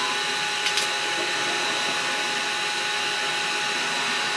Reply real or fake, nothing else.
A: real